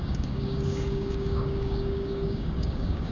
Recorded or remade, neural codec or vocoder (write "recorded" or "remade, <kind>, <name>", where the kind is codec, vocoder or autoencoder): remade, codec, DAC